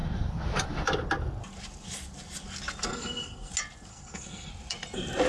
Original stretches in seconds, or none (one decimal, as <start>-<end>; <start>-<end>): 0.0-2.9; 3.5-3.9; 4.5-5.3